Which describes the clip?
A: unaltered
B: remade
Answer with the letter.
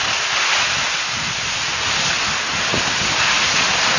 A